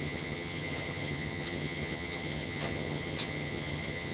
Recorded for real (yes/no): no